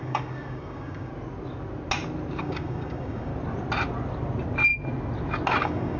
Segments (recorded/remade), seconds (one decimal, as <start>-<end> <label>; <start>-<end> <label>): 0.0-1.1 remade; 1.1-2.4 recorded; 2.4-3.3 remade; 3.3-5.6 recorded; 5.6-6.0 remade